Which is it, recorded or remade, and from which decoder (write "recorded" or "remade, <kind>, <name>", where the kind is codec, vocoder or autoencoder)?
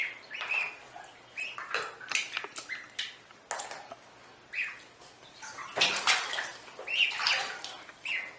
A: recorded